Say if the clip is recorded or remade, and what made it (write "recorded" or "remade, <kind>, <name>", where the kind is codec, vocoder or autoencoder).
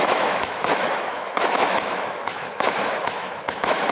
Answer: remade, autoencoder, DAC-VAE